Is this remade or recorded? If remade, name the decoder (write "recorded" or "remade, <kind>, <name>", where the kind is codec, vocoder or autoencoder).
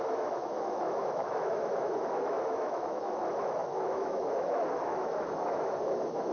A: remade, autoencoder, DAC-VAE